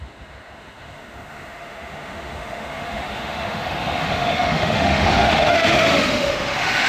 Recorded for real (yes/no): no